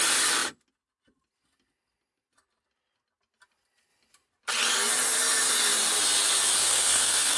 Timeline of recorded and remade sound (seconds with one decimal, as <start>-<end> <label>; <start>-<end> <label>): 0.0-6.6 recorded; 6.6-7.4 remade